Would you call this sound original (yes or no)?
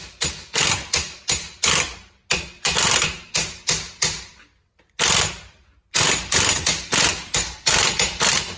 yes